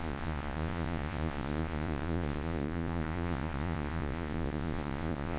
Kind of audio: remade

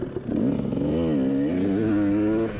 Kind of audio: recorded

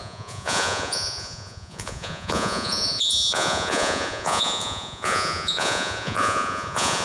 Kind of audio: remade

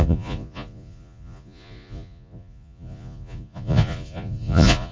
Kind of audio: remade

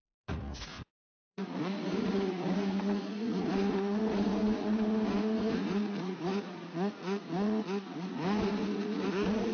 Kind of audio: remade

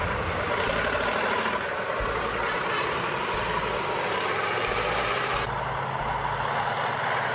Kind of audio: recorded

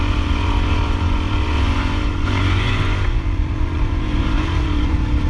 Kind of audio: remade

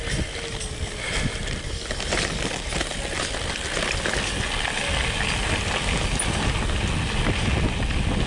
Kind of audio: recorded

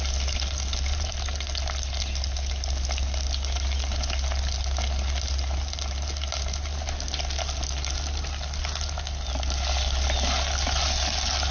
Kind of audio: recorded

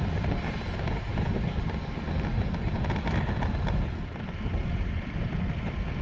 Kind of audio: recorded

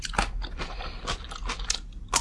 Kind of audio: recorded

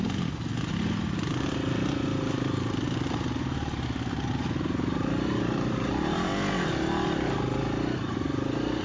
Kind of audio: recorded